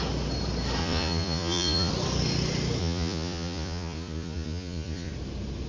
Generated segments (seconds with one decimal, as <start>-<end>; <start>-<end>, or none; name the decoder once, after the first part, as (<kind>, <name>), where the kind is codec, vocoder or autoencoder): 0.8-1.9 (vocoder, Vocos); 2.8-5.1